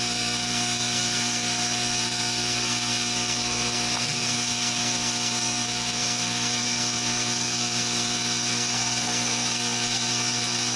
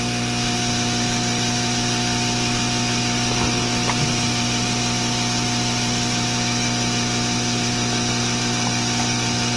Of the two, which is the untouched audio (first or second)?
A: second